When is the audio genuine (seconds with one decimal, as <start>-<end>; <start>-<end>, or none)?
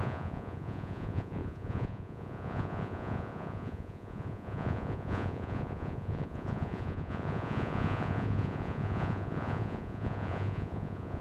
none